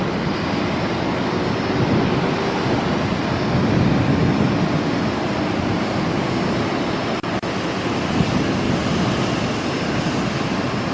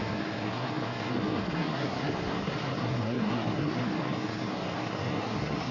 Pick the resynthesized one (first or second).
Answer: second